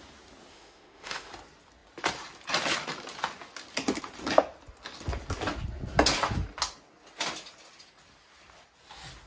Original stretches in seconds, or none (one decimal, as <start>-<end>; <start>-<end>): 0.0-0.5; 1.3-9.3